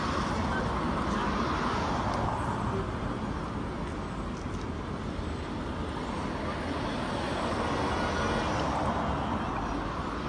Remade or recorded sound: recorded